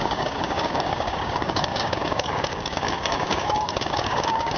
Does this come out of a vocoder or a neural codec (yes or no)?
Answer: yes